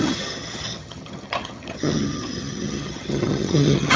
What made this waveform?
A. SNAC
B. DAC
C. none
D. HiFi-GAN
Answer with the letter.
D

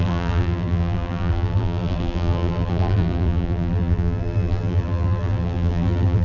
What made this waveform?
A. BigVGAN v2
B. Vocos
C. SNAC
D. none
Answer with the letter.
A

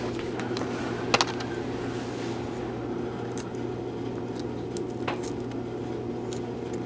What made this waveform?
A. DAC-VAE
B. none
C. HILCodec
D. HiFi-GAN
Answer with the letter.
B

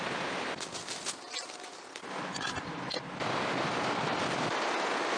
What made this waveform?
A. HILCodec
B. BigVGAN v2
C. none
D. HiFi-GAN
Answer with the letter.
C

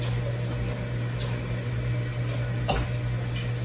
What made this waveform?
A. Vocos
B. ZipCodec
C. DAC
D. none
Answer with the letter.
D